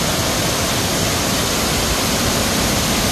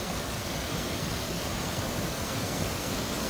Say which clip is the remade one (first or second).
second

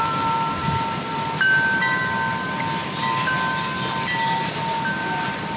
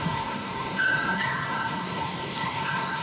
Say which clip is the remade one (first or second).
second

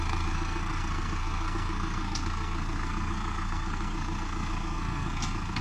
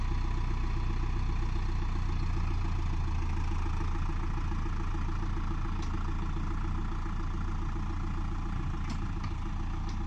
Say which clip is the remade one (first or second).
first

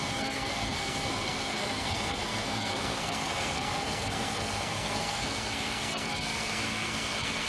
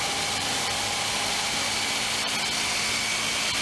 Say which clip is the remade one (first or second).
first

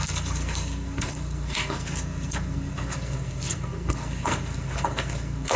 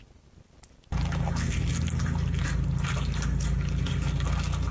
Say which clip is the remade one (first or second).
first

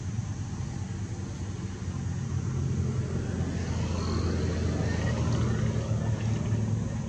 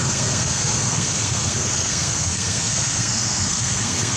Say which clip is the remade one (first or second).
second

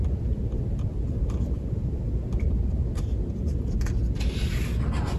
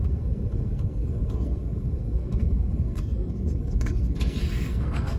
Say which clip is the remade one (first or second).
second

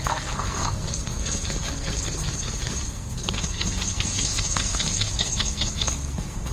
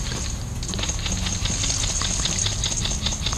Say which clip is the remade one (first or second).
first